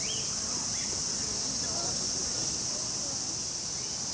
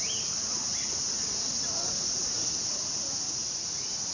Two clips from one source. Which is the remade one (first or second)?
second